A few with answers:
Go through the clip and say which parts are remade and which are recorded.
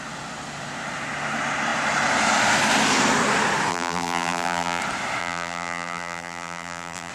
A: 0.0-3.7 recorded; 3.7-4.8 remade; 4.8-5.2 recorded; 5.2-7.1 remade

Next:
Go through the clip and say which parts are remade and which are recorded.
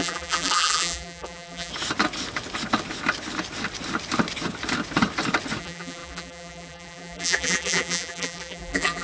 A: 0.0-1.7 remade; 1.7-5.6 recorded; 5.6-9.0 remade